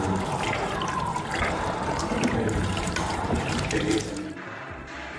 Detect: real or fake fake